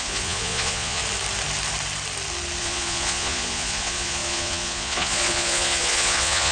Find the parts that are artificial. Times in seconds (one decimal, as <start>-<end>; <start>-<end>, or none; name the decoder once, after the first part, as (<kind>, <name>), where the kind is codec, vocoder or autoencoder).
0.0-1.0 (vocoder, Vocos); 2.6-6.5